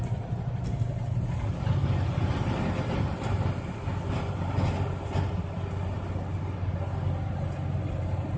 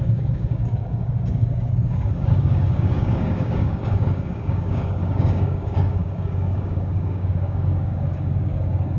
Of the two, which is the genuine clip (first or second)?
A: first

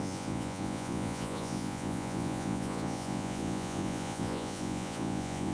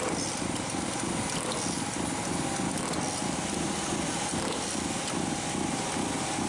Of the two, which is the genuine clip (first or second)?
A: second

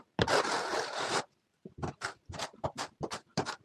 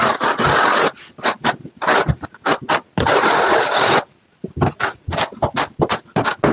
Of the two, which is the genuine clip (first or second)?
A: second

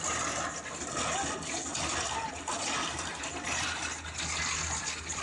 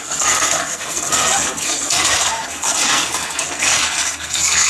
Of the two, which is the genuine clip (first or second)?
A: first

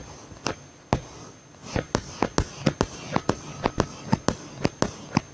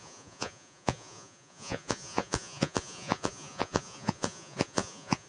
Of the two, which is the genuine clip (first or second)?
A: first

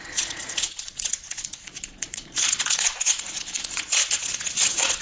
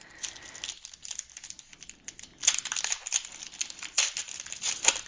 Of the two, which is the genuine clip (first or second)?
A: second